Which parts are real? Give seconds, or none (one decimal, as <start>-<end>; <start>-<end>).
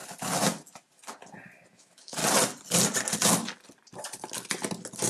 0.0-1.7; 2.2-5.1